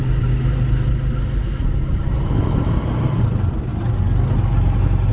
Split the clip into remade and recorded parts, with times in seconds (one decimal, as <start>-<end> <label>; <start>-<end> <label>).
0.0-5.1 recorded